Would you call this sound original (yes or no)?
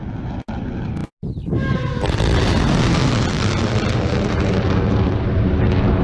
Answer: yes